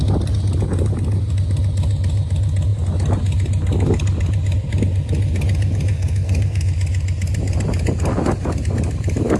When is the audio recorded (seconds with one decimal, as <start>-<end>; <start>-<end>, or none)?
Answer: 0.0-5.9; 6.7-9.4